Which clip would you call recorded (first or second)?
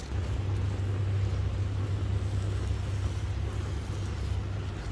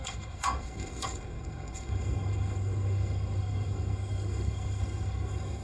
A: first